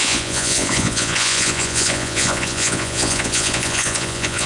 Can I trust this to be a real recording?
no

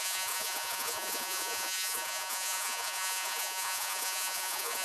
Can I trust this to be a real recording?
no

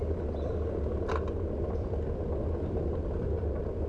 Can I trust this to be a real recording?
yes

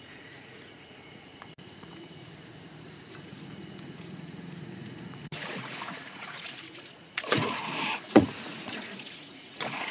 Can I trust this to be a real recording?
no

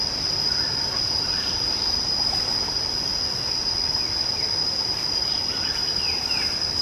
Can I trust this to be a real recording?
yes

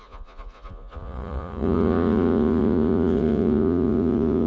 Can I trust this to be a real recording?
no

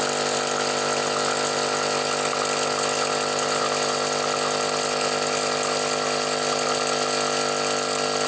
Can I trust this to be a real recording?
yes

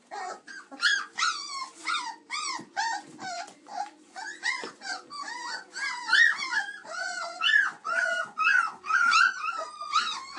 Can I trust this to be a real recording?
no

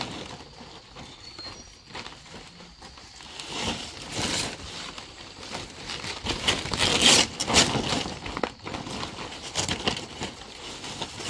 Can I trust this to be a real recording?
yes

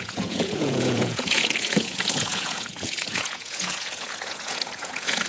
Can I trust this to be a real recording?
no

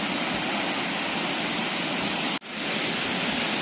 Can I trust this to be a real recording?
yes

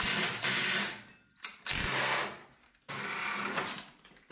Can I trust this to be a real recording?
yes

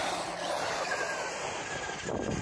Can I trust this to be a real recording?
yes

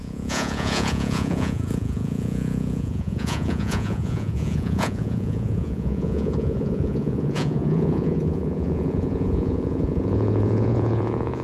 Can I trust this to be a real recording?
no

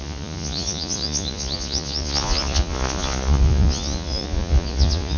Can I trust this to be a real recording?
no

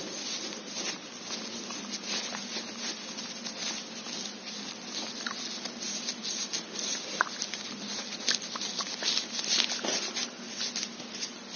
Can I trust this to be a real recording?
yes